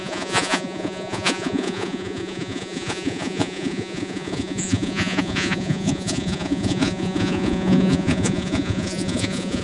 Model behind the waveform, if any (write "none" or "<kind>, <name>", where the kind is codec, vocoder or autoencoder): vocoder, Vocos